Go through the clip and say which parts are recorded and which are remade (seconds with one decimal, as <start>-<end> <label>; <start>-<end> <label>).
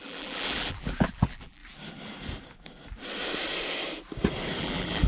0.0-1.6 remade; 1.6-4.6 recorded; 4.6-5.1 remade